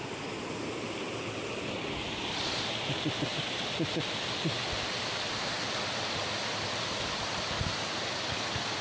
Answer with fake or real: real